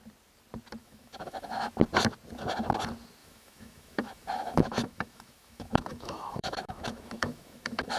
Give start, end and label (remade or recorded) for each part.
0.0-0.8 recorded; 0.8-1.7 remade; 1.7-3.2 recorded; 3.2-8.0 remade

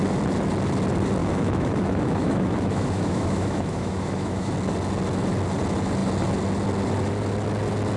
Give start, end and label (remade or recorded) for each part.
0.0-1.2 recorded; 1.2-4.5 remade; 4.5-8.0 recorded

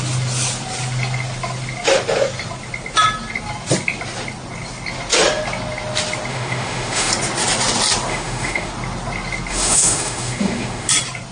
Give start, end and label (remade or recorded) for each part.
0.0-6.3 recorded; 6.3-7.1 remade; 7.1-8.1 recorded; 8.1-8.7 remade; 8.7-9.5 recorded; 9.5-10.9 remade; 10.9-11.3 recorded

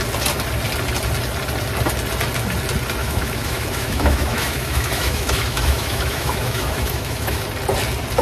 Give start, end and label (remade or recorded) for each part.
0.0-3.0 recorded; 3.0-7.4 remade; 7.4-8.2 recorded